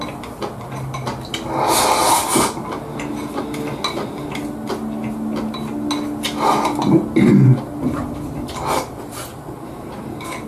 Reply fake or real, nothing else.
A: real